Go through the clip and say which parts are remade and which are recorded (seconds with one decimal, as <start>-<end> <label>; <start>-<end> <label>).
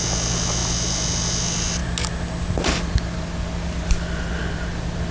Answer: 0.0-5.1 recorded